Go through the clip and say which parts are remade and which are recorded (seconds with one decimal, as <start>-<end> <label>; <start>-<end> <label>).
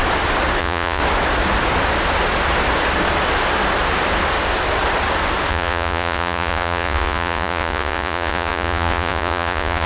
0.0-0.6 recorded; 0.6-1.0 remade; 1.0-5.5 recorded; 5.5-9.9 remade